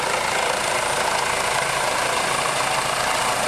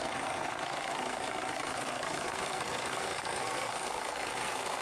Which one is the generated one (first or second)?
second